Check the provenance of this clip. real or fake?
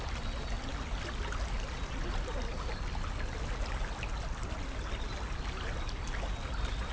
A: real